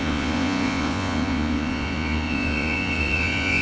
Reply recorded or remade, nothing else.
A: remade